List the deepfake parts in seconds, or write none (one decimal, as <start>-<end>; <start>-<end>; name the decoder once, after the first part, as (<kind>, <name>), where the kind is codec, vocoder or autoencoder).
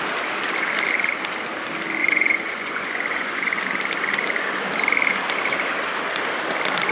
2.0-3.6 (vocoder, Vocos)